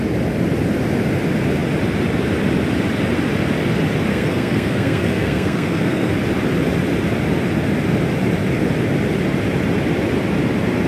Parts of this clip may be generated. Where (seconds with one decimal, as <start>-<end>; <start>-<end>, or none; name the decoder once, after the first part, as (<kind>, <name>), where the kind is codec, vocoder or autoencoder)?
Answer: 4.1-6.1 (codec, SNAC)